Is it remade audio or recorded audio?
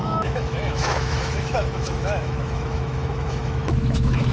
remade